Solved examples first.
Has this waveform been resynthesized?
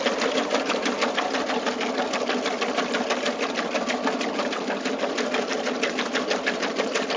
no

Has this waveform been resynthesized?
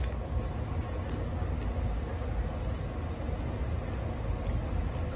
no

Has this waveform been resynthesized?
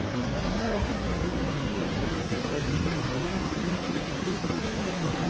yes